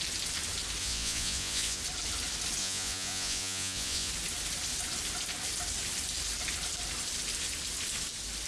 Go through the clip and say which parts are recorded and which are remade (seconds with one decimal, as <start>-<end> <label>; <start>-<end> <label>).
0.0-0.8 recorded; 0.8-1.8 remade; 1.8-2.6 recorded; 2.6-4.1 remade; 4.1-8.5 recorded